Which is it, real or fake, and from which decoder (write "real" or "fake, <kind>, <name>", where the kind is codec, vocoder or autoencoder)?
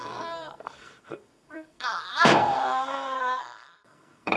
fake, codec, SNAC